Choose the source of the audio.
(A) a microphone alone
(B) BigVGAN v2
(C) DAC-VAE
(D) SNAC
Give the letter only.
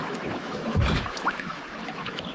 C